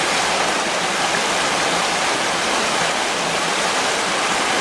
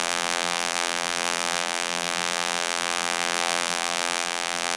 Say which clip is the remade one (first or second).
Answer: second